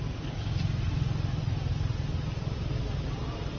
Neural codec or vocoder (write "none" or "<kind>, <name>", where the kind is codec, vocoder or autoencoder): none